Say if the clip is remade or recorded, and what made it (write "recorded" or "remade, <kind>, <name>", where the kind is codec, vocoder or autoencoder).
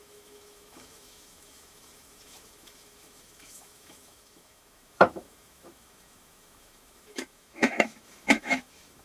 remade, autoencoder, DAC-VAE